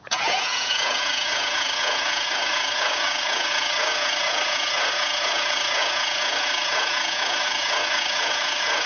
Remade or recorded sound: remade